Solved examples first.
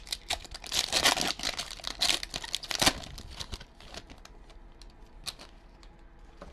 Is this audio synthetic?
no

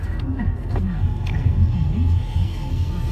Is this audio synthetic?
yes